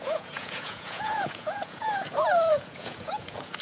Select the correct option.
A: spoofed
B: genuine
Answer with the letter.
A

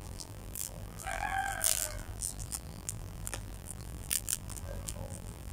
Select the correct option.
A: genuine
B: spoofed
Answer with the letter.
B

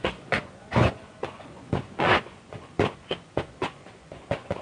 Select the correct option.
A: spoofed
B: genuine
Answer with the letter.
A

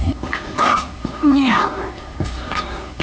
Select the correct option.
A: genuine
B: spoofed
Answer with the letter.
B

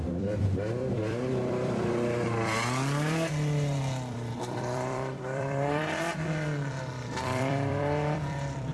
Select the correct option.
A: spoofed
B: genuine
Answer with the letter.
A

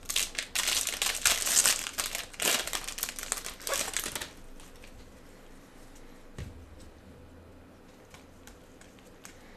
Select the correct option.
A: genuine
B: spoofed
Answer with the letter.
A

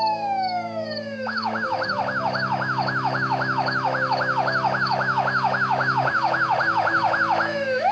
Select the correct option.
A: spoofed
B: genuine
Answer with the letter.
A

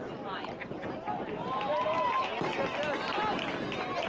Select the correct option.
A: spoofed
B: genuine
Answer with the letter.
B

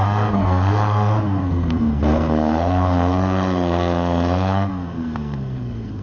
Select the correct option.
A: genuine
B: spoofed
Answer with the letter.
B